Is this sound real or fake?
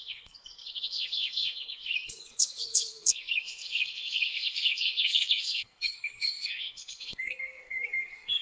fake